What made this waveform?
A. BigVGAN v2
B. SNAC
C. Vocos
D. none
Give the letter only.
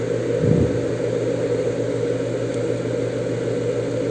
D